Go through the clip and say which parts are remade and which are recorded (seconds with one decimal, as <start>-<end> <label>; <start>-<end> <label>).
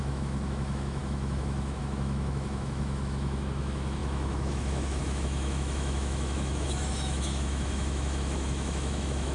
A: 0.0-9.3 remade